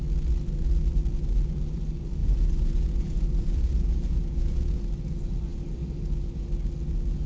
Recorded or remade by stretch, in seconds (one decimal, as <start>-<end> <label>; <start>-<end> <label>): 0.0-2.2 recorded; 2.2-4.8 remade; 4.8-7.3 recorded

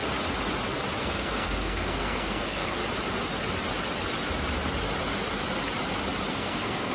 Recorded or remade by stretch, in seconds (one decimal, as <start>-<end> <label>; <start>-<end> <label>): 0.0-1.0 recorded; 1.0-2.8 remade; 2.8-6.3 recorded; 6.3-6.9 remade

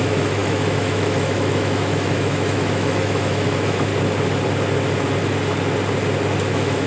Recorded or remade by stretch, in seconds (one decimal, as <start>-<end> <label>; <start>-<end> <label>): 0.0-3.9 remade; 3.9-6.4 recorded; 6.4-6.9 remade

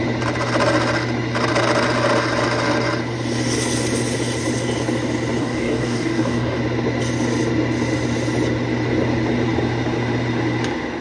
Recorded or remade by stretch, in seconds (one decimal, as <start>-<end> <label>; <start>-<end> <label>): 0.0-5.4 recorded; 5.4-6.6 remade; 6.6-11.0 recorded

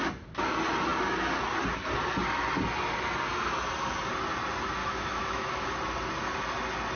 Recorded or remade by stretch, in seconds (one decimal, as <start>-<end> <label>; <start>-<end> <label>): 0.0-4.8 recorded; 4.8-5.7 remade; 5.7-7.0 recorded

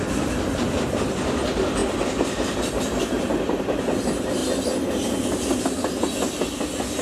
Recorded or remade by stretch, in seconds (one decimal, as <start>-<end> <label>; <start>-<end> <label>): 0.0-7.0 recorded

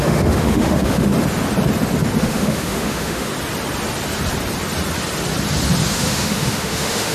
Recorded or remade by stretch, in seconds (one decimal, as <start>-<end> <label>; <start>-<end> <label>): 0.0-1.1 remade; 1.1-2.2 recorded; 2.2-3.3 remade; 3.3-5.9 recorded; 5.9-7.1 remade

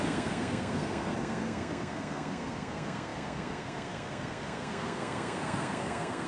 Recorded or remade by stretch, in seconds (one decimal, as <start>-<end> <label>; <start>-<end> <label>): 0.0-6.3 remade